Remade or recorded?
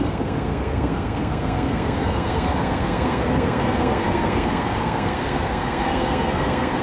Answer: remade